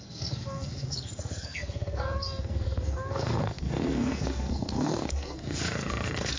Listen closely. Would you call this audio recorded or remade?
remade